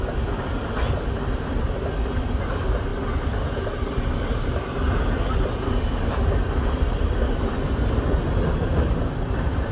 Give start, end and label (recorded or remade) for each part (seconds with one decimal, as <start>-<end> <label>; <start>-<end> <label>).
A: 0.0-9.7 recorded